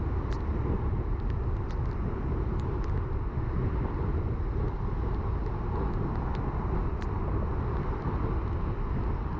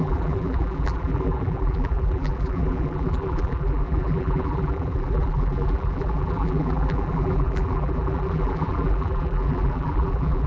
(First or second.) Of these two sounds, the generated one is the second